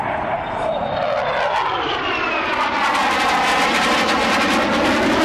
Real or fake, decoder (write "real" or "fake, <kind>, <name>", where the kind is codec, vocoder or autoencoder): real